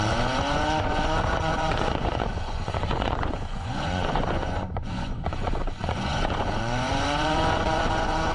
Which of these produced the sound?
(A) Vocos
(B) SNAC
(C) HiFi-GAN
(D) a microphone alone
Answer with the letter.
A